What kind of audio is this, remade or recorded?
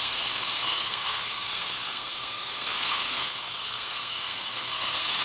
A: remade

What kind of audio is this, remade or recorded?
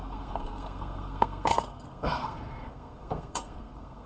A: remade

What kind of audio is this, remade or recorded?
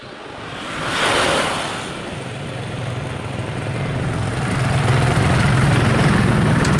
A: recorded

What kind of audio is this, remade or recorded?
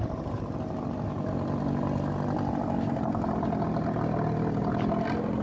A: recorded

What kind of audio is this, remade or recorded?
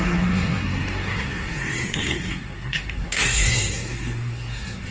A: remade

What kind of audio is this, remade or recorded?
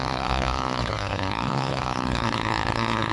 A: remade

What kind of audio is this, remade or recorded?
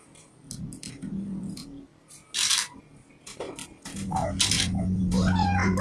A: recorded